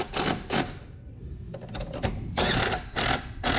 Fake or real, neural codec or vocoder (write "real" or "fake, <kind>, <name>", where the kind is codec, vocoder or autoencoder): real